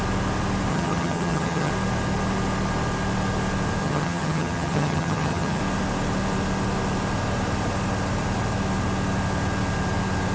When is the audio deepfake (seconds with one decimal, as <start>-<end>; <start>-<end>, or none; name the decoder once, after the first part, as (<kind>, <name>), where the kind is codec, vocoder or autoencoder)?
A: 0.7-1.7 (vocoder, HiFi-GAN); 3.8-5.6